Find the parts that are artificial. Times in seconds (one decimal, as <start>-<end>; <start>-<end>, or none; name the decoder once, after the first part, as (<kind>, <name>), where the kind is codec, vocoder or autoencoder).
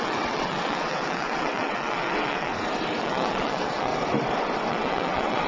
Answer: 0.0-2.5 (vocoder, WaveNeXt); 3.0-3.9; 4.7-5.5